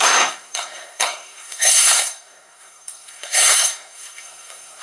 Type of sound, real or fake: fake